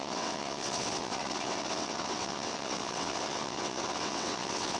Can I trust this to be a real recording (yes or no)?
no